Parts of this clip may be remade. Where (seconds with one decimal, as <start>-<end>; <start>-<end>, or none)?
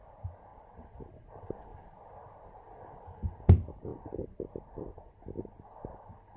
none